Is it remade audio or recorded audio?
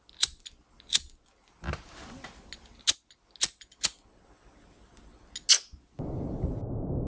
recorded